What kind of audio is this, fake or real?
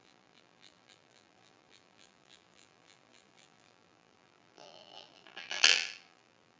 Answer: fake